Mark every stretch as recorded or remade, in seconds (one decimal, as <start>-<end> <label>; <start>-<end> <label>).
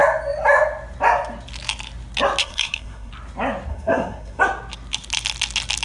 0.0-2.4 recorded; 2.4-3.1 remade; 3.1-3.7 recorded; 3.7-4.4 remade; 4.4-5.8 recorded